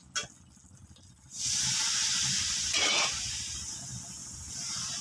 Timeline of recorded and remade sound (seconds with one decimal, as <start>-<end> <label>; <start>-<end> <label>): 0.0-2.0 recorded; 2.0-3.8 remade; 3.8-4.2 recorded; 4.2-5.0 remade